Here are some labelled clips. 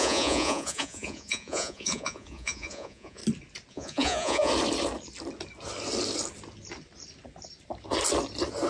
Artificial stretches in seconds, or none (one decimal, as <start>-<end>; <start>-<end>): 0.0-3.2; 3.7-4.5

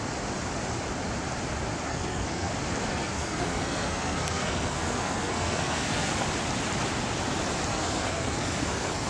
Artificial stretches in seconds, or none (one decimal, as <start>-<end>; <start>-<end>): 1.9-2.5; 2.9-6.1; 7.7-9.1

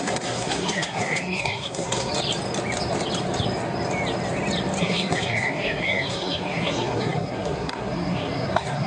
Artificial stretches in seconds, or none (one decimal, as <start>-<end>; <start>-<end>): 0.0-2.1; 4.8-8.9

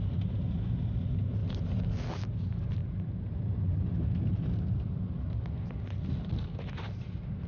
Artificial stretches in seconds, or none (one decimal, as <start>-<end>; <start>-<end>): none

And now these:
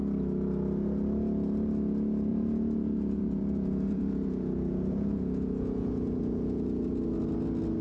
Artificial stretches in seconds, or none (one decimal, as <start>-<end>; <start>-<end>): 2.3-6.9